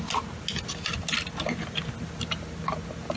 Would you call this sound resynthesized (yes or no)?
no